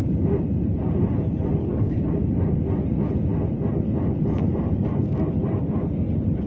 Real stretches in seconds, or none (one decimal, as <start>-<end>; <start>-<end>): 0.0-1.6; 2.1-6.5